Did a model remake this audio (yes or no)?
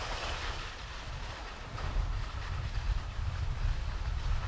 no